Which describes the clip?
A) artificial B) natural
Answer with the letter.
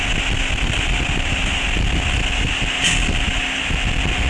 B